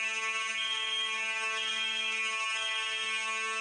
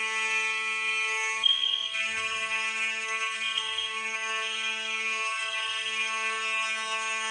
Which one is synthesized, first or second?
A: second